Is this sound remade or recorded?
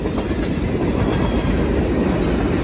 recorded